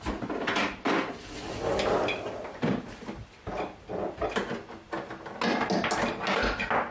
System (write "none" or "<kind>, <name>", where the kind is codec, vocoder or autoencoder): none